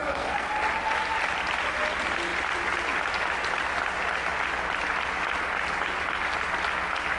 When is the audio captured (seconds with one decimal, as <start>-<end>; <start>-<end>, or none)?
0.5-7.2